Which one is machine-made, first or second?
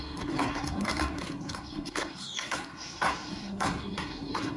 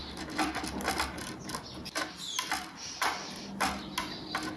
first